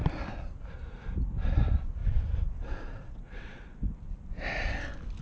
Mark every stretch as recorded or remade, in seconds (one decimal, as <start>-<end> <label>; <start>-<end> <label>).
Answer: 0.0-2.0 recorded; 2.0-3.6 remade; 3.6-5.2 recorded